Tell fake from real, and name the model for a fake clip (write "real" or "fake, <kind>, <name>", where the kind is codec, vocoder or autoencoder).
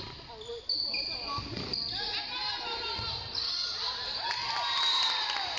real